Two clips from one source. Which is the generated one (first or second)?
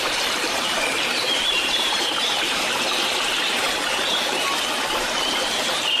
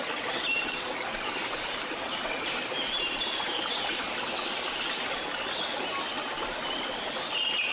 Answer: first